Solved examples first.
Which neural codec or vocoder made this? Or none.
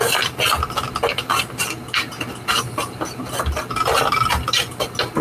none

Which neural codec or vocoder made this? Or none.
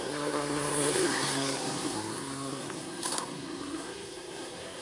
codec, SNAC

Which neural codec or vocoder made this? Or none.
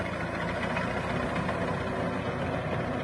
none